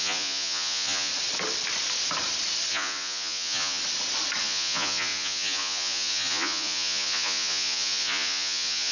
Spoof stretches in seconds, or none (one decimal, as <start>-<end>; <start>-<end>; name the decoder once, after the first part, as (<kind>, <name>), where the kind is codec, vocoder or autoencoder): 0.0-1.1 (vocoder, Vocos); 2.7-3.8; 4.4-8.9